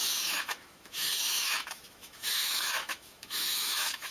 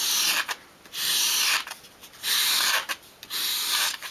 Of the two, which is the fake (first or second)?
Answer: first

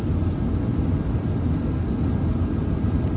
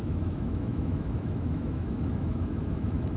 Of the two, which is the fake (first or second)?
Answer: second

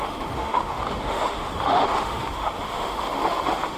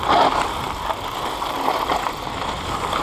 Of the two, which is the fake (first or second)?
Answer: first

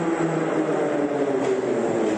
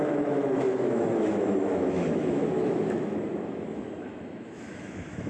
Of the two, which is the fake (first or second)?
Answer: second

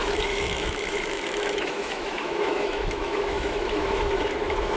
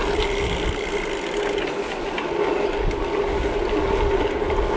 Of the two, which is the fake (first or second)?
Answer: first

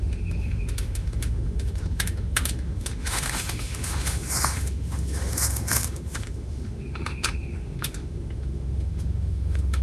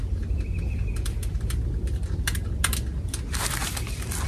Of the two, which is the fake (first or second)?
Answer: first